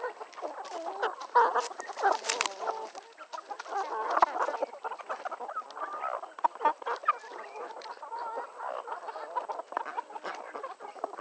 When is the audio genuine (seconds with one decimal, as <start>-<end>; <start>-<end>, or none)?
0.0-11.2